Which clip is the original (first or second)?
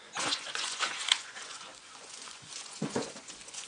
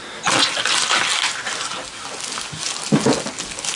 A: second